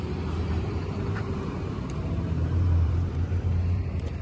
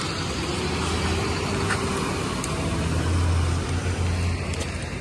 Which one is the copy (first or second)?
first